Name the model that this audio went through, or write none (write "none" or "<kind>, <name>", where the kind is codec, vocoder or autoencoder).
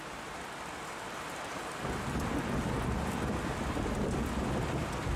none